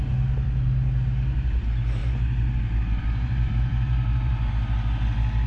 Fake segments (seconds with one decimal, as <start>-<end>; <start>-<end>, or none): 2.0-4.5